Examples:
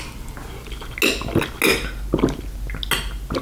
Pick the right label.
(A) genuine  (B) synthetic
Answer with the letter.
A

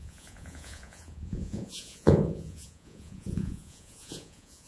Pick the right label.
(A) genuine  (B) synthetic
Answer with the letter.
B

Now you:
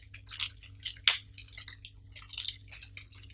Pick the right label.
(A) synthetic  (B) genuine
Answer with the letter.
B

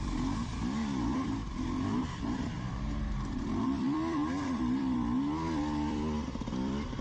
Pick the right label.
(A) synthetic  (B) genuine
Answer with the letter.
A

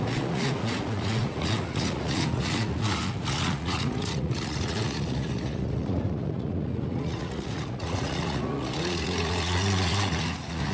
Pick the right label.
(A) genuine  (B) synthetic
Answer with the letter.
B